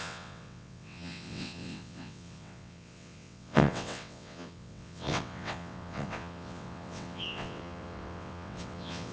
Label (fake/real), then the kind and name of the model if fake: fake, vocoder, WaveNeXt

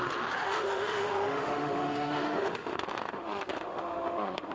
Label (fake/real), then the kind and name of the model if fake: fake, autoencoder, DAC-VAE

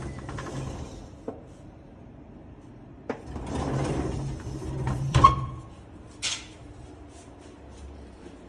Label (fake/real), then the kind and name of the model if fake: fake, vocoder, BigVGAN v2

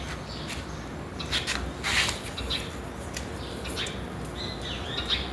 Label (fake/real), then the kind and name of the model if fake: real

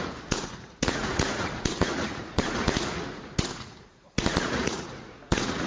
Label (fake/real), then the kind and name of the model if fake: fake, vocoder, Vocos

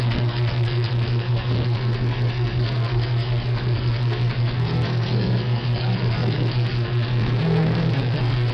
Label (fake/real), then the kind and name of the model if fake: fake, codec, SNAC